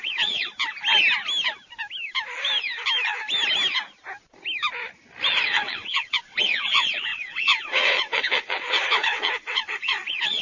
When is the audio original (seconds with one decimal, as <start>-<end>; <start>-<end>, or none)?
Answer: 0.5-5.3